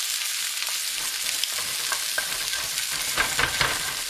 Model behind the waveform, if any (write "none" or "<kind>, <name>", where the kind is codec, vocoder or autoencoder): none